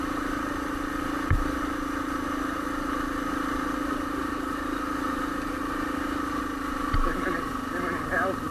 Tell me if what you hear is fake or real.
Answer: fake